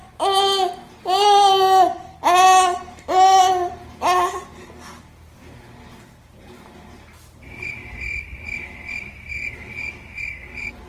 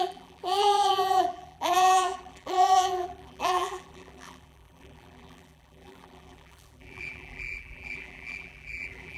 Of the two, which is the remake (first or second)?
second